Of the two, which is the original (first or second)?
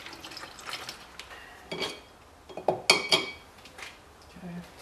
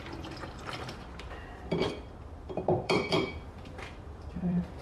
first